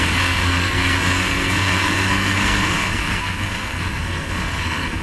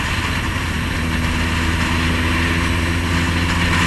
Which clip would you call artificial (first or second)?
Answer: first